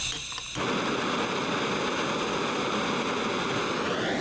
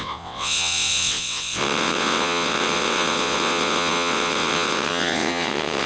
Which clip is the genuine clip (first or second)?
first